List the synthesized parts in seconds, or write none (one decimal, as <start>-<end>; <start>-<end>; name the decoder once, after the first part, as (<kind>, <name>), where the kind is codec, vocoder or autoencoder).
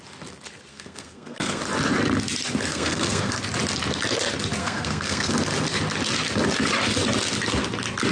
0.7-1.6 (codec, SNAC); 2.7-3.3; 4.6-5.3